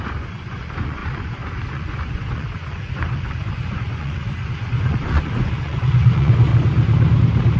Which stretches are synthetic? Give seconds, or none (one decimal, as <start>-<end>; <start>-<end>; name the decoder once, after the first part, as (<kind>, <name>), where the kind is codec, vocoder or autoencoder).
0.0-6.5 (vocoder, Vocos)